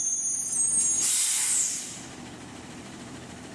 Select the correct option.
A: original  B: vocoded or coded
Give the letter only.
A